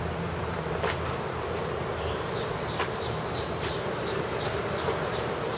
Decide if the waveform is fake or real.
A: fake